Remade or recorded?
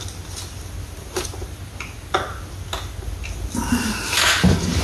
recorded